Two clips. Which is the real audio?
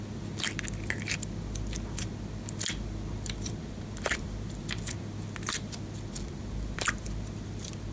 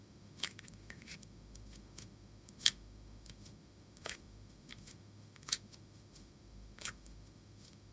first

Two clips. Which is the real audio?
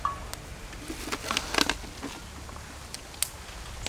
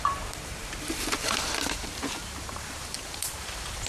first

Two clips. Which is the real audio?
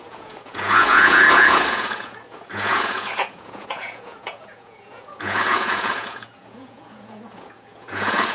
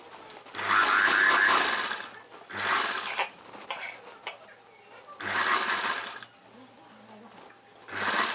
second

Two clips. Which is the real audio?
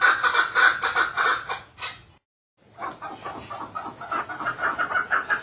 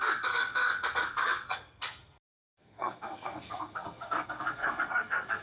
first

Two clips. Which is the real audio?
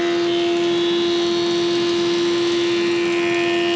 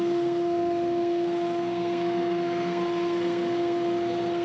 first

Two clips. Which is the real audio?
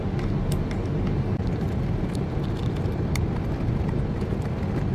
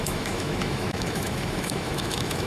first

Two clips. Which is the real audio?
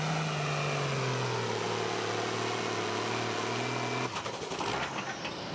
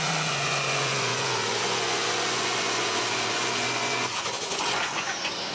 first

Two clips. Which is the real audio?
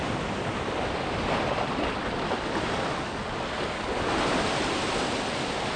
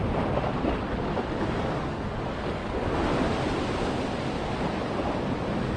second